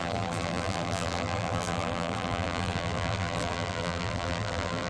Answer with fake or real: fake